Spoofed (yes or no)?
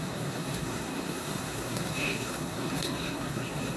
yes